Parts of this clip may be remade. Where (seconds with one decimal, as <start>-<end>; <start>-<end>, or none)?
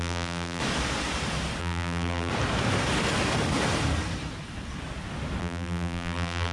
0.0-0.6; 1.6-2.3; 5.4-6.5